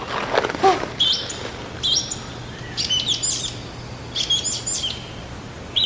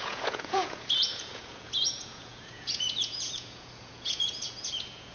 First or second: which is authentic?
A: first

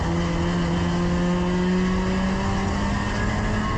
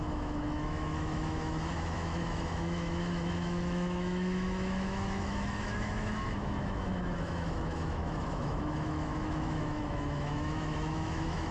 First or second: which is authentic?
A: first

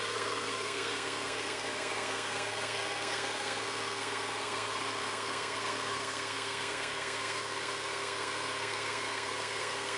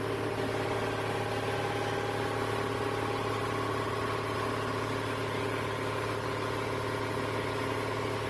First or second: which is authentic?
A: second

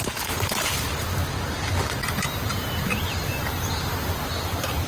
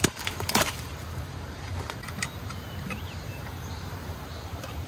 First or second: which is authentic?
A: first